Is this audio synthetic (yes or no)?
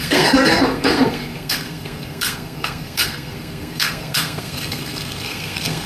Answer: yes